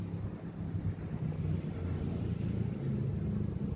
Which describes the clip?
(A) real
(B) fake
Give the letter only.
A